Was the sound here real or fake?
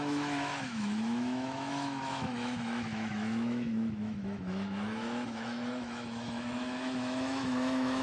fake